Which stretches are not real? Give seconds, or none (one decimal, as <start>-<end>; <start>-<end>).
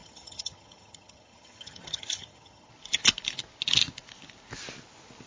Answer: 0.0-2.7